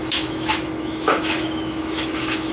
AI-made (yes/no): yes